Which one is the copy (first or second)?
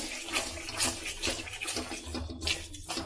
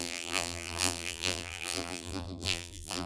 second